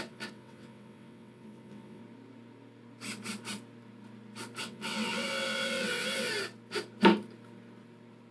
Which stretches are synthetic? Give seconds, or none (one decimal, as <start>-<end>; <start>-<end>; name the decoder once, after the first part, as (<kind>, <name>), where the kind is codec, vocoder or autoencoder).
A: 0.0-2.0 (vocoder, WaveNeXt); 4.6-6.3